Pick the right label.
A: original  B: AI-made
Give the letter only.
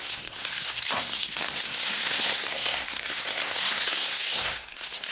B